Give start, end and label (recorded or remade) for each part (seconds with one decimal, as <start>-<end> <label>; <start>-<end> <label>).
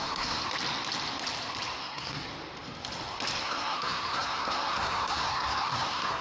0.0-0.4 remade; 0.4-1.8 recorded; 1.8-2.3 remade; 2.3-3.4 recorded; 3.4-6.2 remade